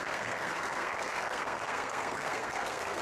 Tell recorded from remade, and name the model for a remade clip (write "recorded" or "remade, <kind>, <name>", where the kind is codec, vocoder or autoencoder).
remade, codec, SNAC